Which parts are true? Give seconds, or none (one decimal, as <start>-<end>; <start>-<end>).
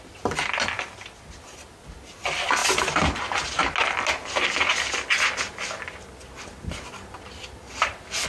0.0-8.3